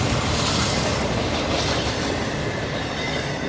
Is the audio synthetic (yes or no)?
no